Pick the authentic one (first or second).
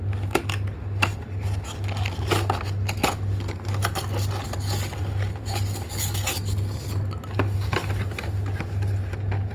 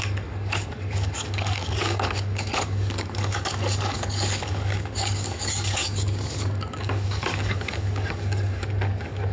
first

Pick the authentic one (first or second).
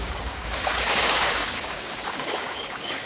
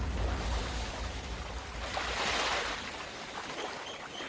second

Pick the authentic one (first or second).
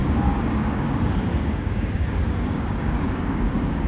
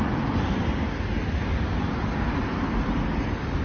second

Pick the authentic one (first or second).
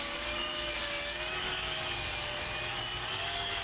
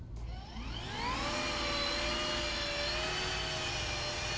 second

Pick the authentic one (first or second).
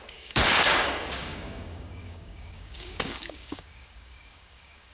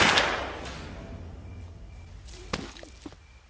second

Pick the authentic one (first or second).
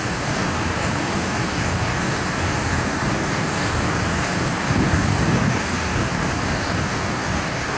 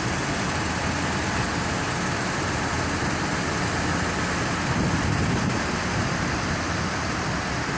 second